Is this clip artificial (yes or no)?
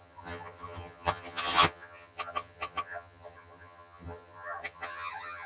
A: yes